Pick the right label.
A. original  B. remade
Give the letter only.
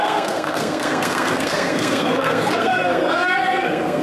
B